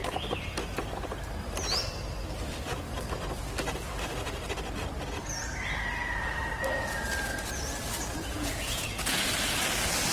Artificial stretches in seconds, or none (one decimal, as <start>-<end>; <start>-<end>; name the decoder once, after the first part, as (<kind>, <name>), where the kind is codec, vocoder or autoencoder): 8.3-9.3 (vocoder, Vocos)